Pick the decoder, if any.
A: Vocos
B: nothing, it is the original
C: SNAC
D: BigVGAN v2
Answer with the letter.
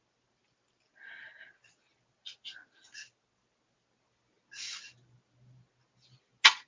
B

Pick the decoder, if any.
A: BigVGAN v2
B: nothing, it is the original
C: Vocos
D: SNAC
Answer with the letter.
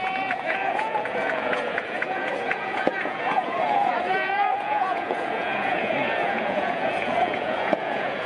C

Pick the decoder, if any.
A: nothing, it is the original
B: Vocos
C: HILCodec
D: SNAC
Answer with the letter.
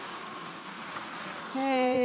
B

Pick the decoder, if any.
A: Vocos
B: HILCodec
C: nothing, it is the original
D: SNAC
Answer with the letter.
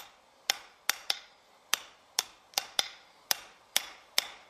C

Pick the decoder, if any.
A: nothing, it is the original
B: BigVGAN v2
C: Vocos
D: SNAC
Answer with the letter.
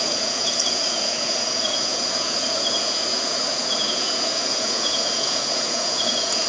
C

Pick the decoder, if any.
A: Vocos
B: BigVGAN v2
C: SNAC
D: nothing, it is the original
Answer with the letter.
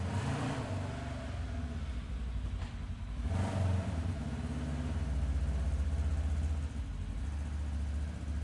D